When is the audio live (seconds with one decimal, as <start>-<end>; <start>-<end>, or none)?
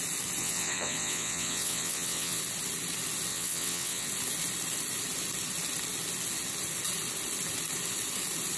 0.0-0.4; 2.4-3.3; 4.1-8.6